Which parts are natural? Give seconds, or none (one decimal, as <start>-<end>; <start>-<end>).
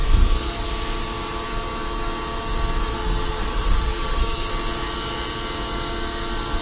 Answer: 0.7-2.9; 4.5-6.6